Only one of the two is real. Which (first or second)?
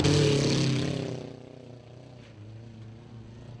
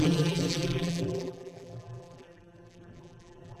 first